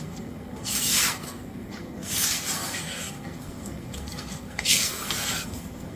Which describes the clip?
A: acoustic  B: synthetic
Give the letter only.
B